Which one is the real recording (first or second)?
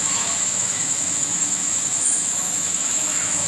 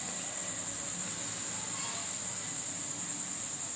second